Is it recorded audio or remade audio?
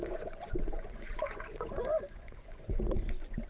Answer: remade